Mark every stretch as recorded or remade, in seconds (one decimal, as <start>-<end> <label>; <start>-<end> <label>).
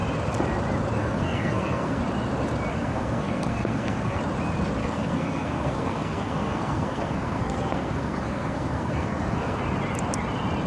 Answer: 0.0-1.0 recorded; 1.0-2.0 remade; 2.0-2.7 recorded; 2.7-4.2 remade; 4.2-4.8 recorded; 4.8-9.6 remade; 9.6-10.7 recorded